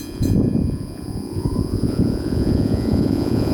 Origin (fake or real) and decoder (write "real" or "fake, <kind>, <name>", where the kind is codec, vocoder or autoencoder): fake, vocoder, Vocos